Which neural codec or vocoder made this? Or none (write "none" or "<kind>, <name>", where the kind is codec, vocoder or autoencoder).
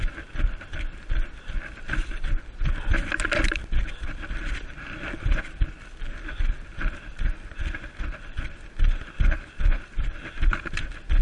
none